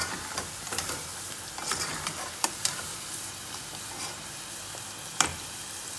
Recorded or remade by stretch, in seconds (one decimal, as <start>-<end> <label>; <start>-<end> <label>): 0.0-3.6 remade; 3.6-5.3 recorded; 5.3-6.0 remade